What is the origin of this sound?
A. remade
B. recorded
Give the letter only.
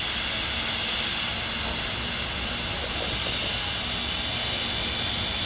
B